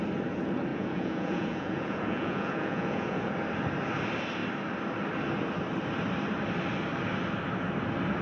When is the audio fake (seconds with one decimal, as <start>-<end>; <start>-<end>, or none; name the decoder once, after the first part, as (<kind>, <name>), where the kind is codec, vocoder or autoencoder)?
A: 0.7-3.3 (vocoder, Vocos)